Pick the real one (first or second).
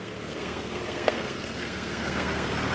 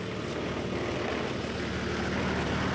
second